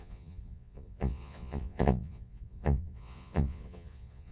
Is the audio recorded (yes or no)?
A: no